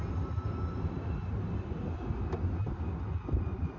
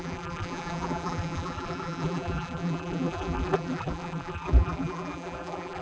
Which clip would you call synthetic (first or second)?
second